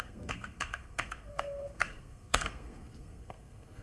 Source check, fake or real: fake